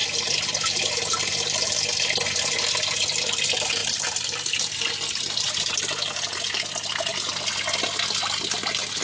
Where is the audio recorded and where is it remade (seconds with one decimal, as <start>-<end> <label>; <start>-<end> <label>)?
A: 0.0-3.8 recorded; 3.8-5.7 remade; 5.7-9.0 recorded